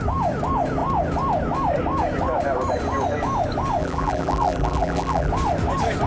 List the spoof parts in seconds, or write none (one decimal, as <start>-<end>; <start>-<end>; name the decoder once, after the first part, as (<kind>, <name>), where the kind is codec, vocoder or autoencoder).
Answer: 3.8-5.3 (vocoder, BigVGAN v2)